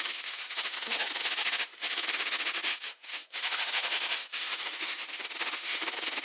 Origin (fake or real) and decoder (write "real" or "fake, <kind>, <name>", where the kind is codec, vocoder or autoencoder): fake, autoencoder, DAC-VAE